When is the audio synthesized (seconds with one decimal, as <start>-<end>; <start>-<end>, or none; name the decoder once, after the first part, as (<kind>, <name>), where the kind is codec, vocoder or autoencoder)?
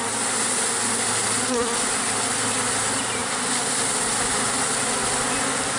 none